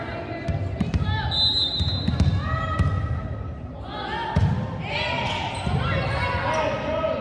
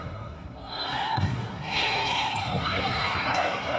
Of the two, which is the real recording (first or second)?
first